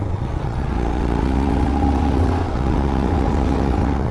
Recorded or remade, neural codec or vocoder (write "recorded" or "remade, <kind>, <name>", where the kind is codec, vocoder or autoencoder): remade, vocoder, WaveNeXt